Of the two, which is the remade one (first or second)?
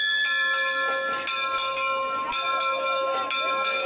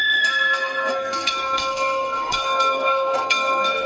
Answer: second